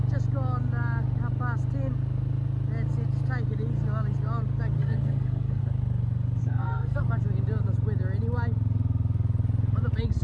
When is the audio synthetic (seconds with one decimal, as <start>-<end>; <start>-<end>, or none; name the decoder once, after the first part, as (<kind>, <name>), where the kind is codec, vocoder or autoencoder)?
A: 4.8-5.6 (codec, SNAC); 6.4-7.0